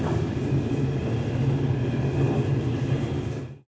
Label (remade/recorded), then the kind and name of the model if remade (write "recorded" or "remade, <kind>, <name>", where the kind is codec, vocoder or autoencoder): recorded